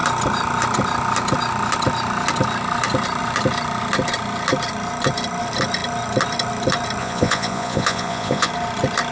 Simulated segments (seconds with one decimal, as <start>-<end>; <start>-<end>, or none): 7.0-8.5

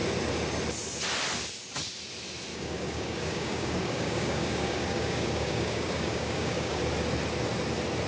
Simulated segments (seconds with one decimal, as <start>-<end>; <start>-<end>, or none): 2.5-6.8

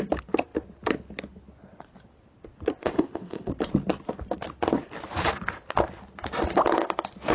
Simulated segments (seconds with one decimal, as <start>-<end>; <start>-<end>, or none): 2.8-3.5

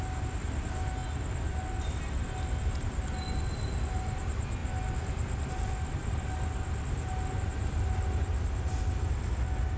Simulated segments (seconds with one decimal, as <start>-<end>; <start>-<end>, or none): none

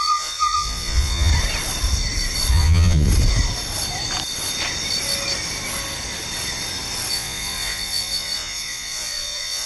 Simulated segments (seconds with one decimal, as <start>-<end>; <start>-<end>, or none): 0.0-1.3; 2.5-3.1; 7.1-9.7

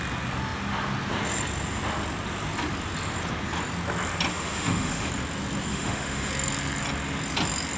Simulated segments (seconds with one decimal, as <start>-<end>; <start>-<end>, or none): 4.3-5.1; 5.7-6.3